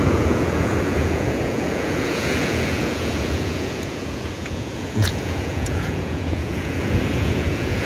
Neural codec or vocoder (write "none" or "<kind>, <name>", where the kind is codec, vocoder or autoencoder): vocoder, Vocos